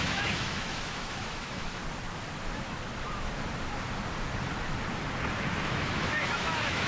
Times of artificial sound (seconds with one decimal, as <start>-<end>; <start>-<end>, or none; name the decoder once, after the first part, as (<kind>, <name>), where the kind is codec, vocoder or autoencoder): 0.0-1.8 (autoencoder, DAC-VAE); 5.6-6.9